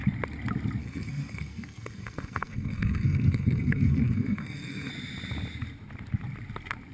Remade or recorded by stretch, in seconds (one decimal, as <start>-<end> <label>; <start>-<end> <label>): 0.0-0.8 recorded; 0.8-4.9 remade; 4.9-6.9 recorded